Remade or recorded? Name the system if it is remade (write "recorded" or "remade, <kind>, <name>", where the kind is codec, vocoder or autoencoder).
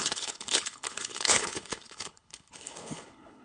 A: remade, codec, HILCodec